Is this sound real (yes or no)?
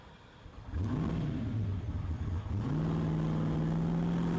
yes